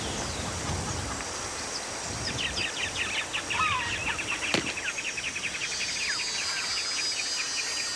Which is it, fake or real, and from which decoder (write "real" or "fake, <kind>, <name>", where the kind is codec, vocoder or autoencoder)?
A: real